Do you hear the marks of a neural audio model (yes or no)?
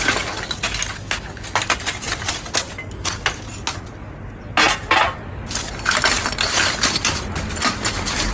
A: no